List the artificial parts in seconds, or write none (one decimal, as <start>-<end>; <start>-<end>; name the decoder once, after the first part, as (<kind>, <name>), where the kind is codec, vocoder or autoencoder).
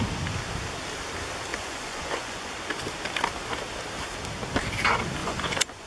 1.5-2.5 (vocoder, Vocos); 5.2-5.9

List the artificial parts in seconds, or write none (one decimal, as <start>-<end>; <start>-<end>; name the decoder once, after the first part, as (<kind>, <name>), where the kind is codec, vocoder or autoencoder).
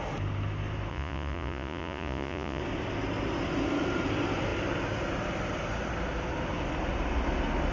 0.9-2.6 (vocoder, Vocos)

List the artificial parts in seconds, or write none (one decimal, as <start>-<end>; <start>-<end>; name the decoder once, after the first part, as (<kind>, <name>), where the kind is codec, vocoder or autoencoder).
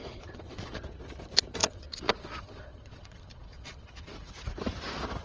0.0-0.8 (vocoder, Vocos); 1.6-4.3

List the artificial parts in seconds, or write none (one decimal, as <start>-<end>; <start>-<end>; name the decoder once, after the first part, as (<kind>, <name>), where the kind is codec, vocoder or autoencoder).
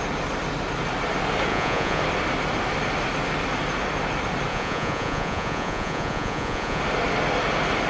1.5-2.0 (vocoder, Vocos); 4.5-6.8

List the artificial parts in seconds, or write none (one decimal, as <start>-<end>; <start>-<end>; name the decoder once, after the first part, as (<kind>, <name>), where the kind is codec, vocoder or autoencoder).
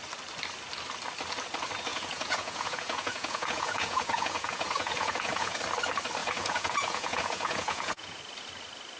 1.9-5.6 (vocoder, Vocos); 6.2-8.2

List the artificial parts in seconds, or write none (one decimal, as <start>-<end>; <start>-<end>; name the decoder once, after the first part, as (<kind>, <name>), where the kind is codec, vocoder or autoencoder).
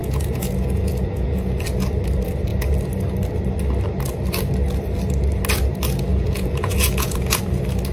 0.0-1.6 (vocoder, Vocos); 6.1-7.4